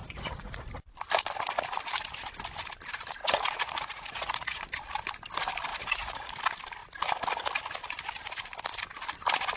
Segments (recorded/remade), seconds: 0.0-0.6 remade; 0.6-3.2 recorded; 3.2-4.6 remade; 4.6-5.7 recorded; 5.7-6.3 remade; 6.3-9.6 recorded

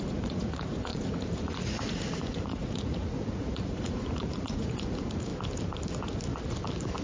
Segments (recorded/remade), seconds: 0.0-5.3 remade; 5.3-7.0 recorded